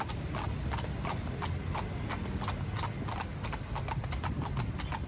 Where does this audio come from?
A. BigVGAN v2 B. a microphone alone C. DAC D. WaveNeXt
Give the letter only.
B